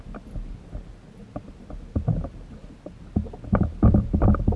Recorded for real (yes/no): yes